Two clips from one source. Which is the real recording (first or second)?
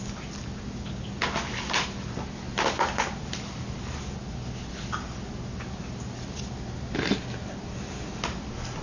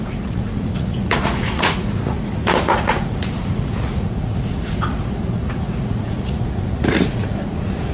first